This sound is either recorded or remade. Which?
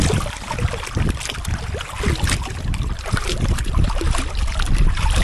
recorded